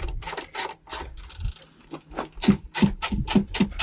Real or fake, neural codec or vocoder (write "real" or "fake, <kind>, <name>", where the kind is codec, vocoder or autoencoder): real